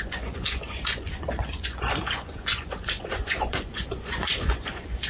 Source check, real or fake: fake